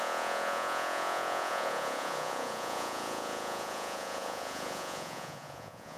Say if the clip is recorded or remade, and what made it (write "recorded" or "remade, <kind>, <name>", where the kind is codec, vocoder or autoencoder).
remade, vocoder, Vocos